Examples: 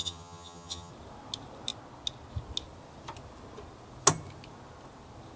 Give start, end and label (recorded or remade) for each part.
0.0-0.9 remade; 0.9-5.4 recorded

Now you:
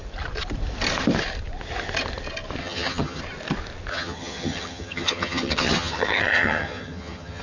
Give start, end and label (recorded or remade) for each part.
0.0-2.6 recorded; 2.6-3.2 remade; 3.2-3.9 recorded; 3.9-7.4 remade

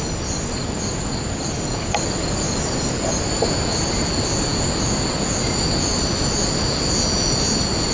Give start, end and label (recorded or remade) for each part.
0.0-7.9 recorded

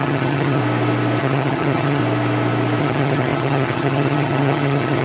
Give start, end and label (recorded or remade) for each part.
0.0-0.6 remade; 0.6-1.2 recorded; 1.2-2.0 remade; 2.0-2.8 recorded; 2.8-5.0 remade

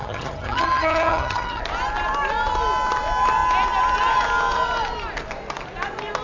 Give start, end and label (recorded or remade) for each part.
0.0-1.6 remade; 1.6-6.2 recorded

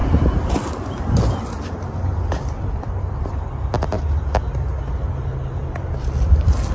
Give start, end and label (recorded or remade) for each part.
0.0-6.7 recorded